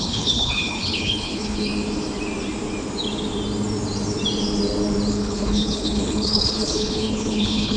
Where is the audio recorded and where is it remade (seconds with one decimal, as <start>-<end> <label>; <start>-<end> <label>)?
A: 0.0-1.7 remade; 1.7-5.1 recorded; 5.1-7.8 remade